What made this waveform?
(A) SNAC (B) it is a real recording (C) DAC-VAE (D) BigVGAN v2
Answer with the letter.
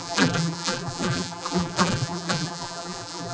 D